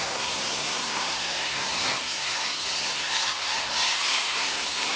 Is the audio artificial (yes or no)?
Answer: yes